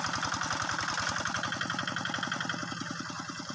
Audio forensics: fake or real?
fake